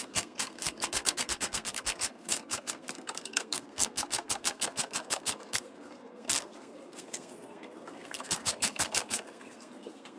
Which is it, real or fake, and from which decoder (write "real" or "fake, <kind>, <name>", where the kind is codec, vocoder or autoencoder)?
fake, codec, SNAC